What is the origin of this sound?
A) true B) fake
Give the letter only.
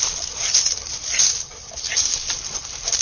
A